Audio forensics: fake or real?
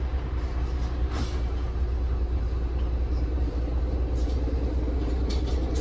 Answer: fake